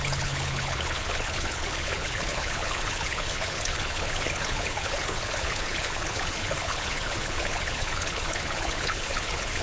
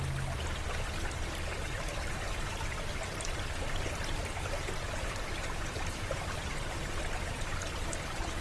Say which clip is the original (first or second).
second